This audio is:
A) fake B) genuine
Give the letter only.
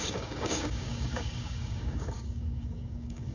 A